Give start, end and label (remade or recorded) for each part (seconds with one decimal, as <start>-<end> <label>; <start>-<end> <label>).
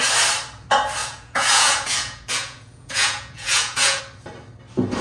0.0-1.0 recorded; 1.0-4.0 remade; 4.0-5.0 recorded